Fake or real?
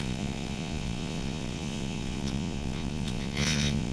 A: fake